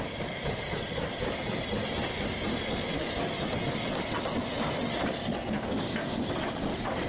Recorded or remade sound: recorded